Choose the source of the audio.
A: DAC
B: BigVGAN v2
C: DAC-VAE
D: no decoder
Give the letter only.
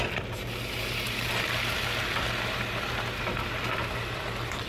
B